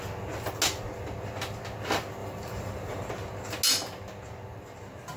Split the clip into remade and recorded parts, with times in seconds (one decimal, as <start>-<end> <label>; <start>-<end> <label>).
0.0-2.2 recorded; 2.2-3.1 remade; 3.1-5.2 recorded